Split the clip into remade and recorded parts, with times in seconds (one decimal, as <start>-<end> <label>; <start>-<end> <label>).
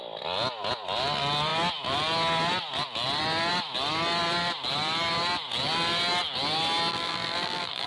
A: 0.0-6.9 recorded; 6.9-7.9 remade